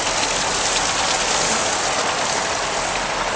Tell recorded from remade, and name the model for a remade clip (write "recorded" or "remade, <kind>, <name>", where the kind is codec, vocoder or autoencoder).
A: recorded